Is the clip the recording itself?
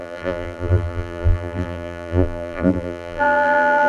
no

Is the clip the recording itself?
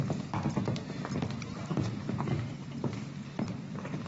yes